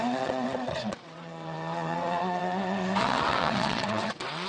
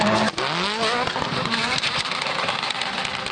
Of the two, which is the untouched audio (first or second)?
second